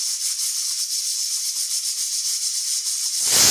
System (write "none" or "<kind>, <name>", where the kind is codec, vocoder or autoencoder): none